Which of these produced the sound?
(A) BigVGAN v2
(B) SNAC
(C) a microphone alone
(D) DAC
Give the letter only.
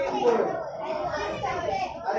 A